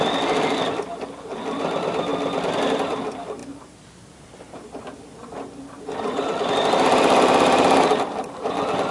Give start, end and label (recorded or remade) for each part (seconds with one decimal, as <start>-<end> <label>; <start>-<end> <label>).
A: 0.0-8.9 recorded